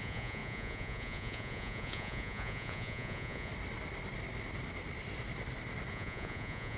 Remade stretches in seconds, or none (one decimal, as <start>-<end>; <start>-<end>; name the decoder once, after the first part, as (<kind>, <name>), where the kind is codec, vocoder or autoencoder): 0.0-3.5 (vocoder, Vocos); 5.9-6.8